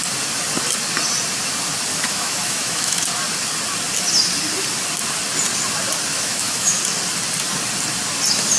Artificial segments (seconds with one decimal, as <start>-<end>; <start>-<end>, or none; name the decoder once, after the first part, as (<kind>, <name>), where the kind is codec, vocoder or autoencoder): 1.9-3.0 (autoencoder, DAC-VAE); 6.1-6.8